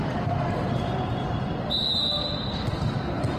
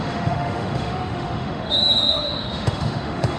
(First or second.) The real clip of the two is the first